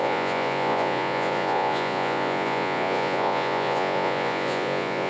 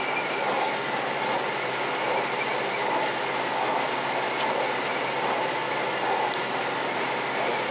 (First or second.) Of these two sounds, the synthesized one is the first